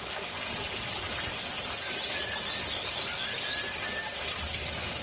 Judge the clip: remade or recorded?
recorded